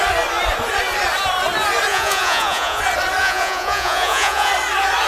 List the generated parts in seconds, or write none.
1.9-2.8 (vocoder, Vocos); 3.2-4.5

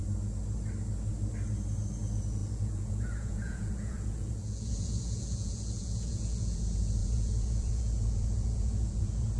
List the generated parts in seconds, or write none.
2.4-6.6 (vocoder, Vocos); 7.0-9.4

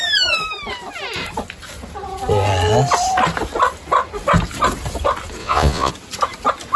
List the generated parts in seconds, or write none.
5.4-5.9 (vocoder, Vocos)

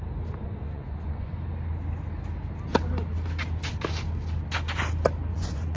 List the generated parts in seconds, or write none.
0.4-1.3 (vocoder, Vocos); 5.3-5.8

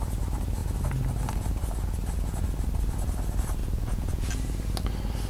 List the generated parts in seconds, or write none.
3.6-4.3 (vocoder, Vocos)

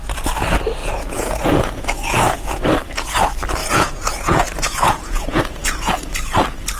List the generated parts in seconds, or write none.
0.8-2.6 (vocoder, Vocos); 3.6-5.9

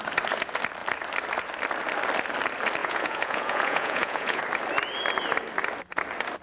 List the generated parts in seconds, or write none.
2.8-4.4 (vocoder, Vocos)